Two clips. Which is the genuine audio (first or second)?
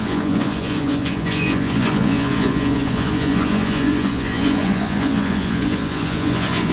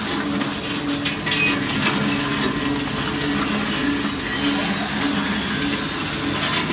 second